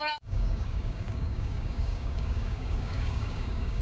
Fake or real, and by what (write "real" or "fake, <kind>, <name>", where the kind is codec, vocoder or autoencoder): fake, codec, DAC